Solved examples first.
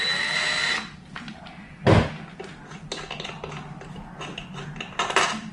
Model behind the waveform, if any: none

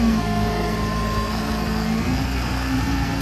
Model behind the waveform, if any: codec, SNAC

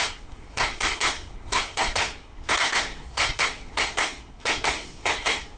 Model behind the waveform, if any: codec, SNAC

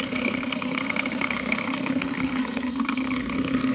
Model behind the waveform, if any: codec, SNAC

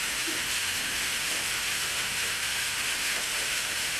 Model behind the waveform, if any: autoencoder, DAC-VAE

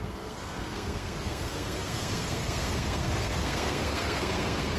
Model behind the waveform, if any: codec, SNAC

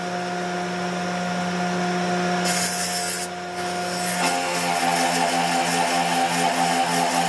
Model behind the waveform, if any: none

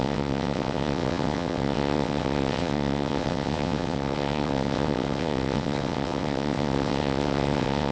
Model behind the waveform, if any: vocoder, WaveNeXt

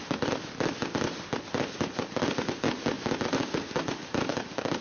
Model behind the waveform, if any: none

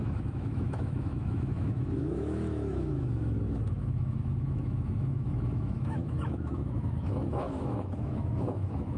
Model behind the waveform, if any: autoencoder, DAC-VAE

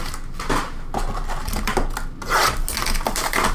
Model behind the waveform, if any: none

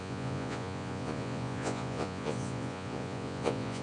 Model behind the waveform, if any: vocoder, Vocos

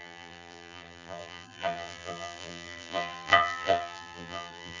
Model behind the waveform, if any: vocoder, BigVGAN v2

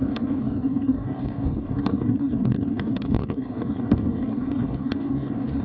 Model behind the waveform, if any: codec, DAC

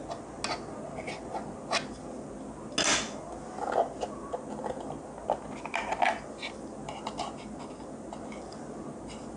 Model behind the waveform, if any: none